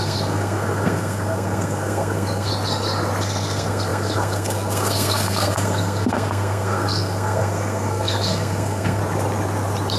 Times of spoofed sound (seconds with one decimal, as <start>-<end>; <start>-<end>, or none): 0.0-2.5; 3.2-9.0